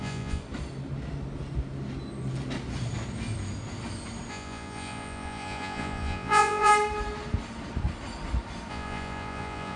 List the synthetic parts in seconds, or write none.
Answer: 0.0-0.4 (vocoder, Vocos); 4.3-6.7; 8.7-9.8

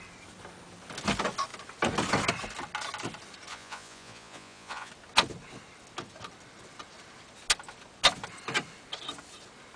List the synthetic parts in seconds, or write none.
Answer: 3.5-4.9 (vocoder, Vocos)

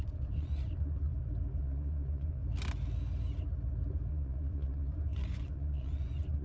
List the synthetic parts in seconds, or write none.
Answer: 0.0-1.1 (vocoder, Vocos); 1.6-2.4; 4.1-6.4

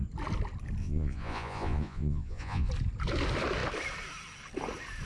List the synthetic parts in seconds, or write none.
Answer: 0.8-2.7 (vocoder, Vocos)

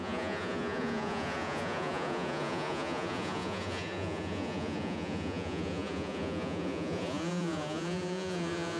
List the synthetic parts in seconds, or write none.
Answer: 0.0-8.8 (vocoder, Vocos)

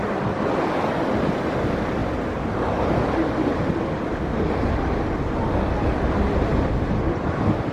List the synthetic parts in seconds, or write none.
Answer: none

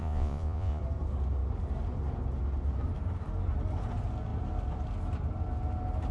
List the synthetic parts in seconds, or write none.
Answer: 0.0-0.8 (vocoder, Vocos)

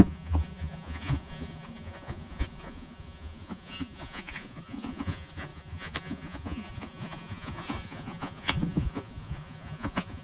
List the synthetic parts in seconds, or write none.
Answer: 0.0-10.2 (vocoder, Vocos)